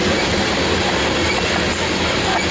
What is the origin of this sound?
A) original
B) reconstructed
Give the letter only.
A